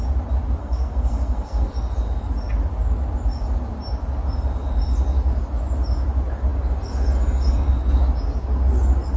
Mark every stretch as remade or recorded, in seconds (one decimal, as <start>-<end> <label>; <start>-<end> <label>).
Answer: 0.0-0.6 recorded; 0.6-1.7 remade; 1.7-9.2 recorded